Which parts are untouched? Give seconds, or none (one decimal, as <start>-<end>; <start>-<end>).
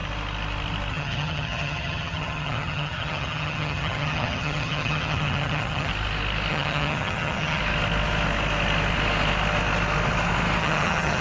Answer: 0.0-0.9; 5.9-6.5; 7.6-10.6